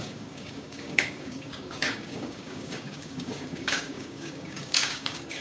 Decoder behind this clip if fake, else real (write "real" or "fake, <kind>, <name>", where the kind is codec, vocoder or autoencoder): fake, codec, DAC